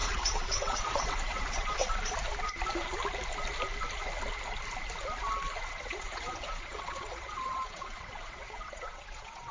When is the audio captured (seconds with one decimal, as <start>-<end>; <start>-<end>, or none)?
1.8-5.7